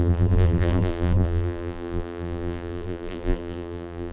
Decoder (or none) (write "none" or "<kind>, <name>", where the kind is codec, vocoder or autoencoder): vocoder, BigVGAN v2